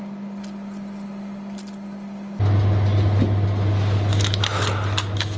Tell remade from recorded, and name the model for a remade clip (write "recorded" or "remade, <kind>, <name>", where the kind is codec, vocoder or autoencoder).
recorded